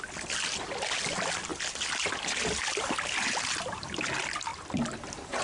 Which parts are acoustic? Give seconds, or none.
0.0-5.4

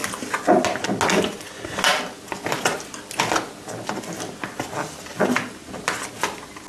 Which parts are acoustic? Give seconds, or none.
0.0-6.7

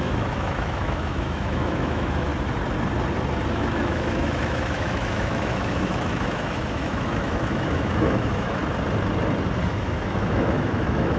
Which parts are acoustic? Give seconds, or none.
2.3-3.5; 8.6-9.7

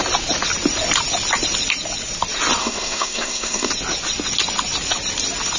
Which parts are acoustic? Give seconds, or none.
0.0-2.6; 3.7-5.6